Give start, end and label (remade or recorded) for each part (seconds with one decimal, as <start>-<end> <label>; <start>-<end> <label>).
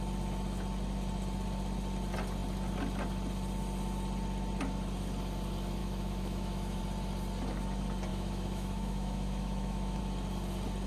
0.0-5.8 recorded; 5.8-6.8 remade; 6.8-8.1 recorded; 8.1-10.0 remade; 10.0-10.9 recorded